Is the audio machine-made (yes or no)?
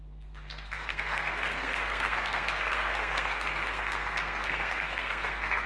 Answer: yes